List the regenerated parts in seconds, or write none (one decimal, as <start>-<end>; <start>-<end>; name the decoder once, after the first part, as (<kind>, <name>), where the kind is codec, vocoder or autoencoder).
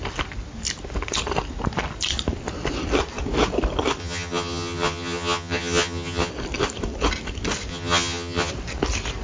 4.0-6.3 (vocoder, HiFi-GAN); 7.7-8.5